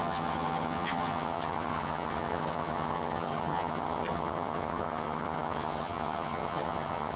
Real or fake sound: fake